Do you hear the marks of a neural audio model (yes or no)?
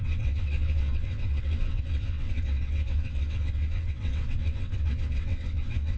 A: yes